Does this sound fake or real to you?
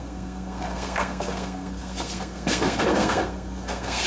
fake